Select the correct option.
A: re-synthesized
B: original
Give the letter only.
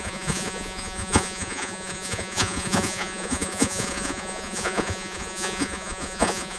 A